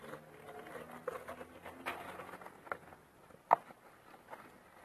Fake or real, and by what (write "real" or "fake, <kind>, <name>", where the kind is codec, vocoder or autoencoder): real